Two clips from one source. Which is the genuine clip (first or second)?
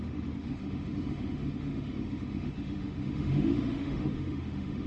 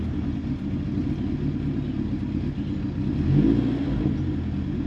second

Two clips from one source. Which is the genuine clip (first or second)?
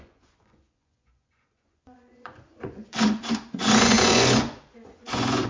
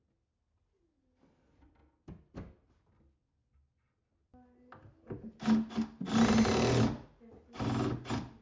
second